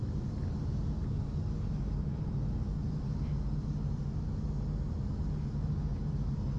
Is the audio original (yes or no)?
yes